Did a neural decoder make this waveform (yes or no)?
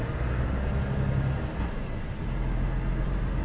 no